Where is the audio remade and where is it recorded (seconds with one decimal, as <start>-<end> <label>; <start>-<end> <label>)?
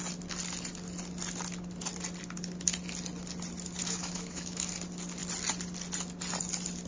0.0-3.8 recorded; 3.8-4.7 remade; 4.7-6.9 recorded